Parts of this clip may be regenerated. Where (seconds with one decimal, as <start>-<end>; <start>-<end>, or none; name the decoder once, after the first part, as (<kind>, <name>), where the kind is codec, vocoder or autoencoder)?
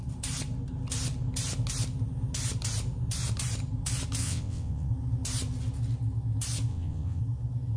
4.2-4.9 (vocoder, WaveNeXt); 6.7-7.2